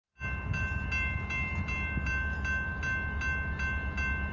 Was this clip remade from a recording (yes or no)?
no